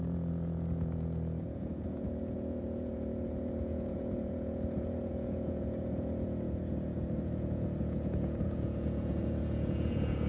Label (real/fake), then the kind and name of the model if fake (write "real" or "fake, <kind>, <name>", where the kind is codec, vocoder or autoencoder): fake, vocoder, Vocos